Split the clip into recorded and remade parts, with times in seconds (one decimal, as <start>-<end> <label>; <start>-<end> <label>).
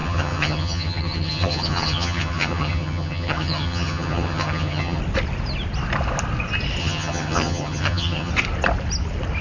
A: 0.0-5.0 remade; 5.0-6.8 recorded; 6.8-8.3 remade; 8.3-9.4 recorded